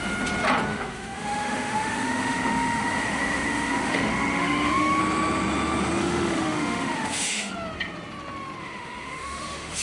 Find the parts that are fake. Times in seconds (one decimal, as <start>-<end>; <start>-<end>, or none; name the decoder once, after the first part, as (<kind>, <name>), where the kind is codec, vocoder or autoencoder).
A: 0.7-5.0 (autoencoder, DAC-VAE); 6.0-7.5; 8.6-9.8

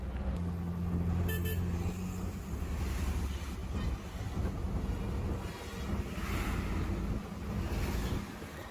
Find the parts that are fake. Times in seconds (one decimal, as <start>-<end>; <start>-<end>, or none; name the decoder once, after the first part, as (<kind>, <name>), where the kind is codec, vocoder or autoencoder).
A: none

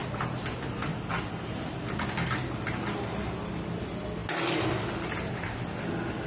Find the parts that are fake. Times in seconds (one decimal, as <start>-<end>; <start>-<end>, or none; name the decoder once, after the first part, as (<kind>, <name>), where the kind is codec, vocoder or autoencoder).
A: none

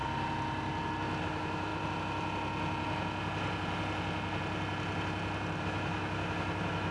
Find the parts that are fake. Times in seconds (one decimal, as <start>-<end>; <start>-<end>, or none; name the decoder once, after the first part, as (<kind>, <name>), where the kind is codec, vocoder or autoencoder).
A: 1.2-1.7 (autoencoder, DAC-VAE); 5.6-6.9

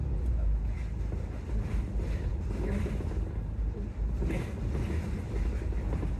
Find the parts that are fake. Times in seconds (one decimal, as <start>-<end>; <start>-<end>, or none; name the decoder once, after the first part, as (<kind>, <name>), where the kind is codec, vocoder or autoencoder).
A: none

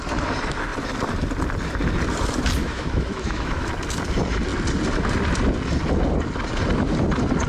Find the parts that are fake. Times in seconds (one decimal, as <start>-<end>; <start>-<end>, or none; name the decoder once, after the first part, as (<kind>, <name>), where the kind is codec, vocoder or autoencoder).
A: 2.6-3.7 (autoencoder, DAC-VAE)

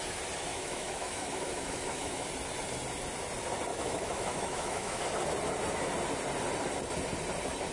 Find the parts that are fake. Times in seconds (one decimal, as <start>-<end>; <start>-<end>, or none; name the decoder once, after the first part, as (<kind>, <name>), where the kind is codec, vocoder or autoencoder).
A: 0.5-2.3 (autoencoder, DAC-VAE); 3.7-5.0

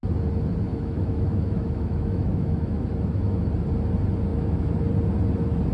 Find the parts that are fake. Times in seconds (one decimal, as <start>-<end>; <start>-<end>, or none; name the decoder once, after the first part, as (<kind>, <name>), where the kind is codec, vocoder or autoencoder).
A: 0.7-3.5 (autoencoder, DAC-VAE); 4.3-4.8